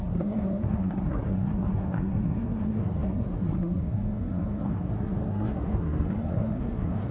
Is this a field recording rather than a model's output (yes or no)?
no